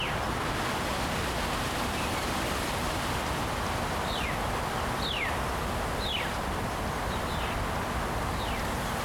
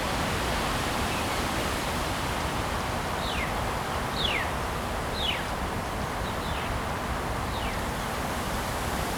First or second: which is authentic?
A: first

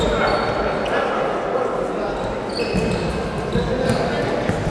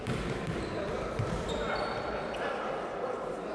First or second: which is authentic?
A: first